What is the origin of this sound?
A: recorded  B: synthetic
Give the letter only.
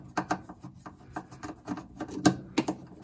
A